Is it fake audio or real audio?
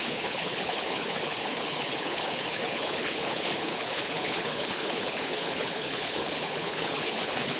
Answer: fake